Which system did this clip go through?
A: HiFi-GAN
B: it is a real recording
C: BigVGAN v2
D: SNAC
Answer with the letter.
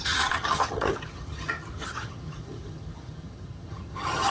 A